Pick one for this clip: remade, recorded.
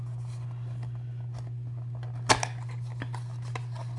recorded